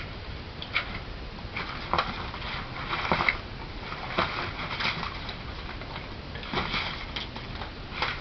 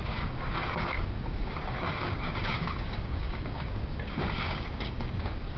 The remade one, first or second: second